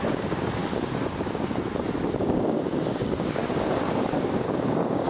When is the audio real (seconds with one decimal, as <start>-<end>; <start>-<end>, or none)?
0.6-2.3